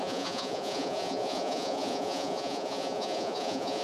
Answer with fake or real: fake